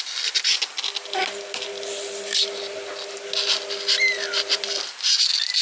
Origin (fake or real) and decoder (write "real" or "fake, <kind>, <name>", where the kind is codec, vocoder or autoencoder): real